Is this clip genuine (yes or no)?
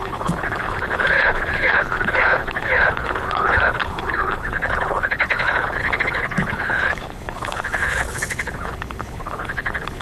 no